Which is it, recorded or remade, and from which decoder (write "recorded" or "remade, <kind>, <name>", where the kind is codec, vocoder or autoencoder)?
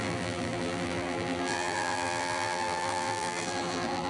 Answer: remade, vocoder, BigVGAN v2